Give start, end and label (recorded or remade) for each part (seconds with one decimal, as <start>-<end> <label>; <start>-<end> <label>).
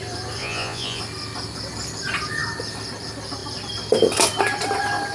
0.0-0.4 recorded; 0.4-1.0 remade; 1.0-5.1 recorded